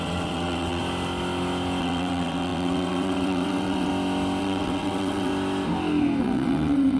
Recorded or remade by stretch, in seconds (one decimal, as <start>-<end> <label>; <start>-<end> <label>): 0.0-0.8 remade; 0.8-1.8 recorded; 1.8-3.9 remade; 3.9-4.4 recorded; 4.4-5.3 remade; 5.3-6.2 recorded; 6.2-7.0 remade